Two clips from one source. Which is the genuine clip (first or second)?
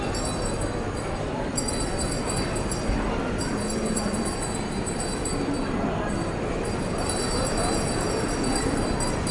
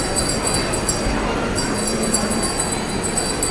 second